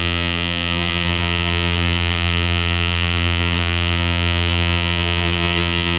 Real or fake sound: fake